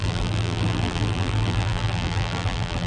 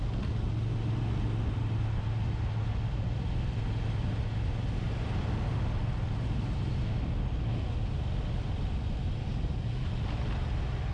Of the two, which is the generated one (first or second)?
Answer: first